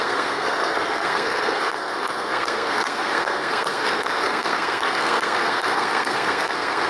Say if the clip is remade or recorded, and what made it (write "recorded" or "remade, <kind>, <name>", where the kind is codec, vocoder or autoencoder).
remade, codec, SNAC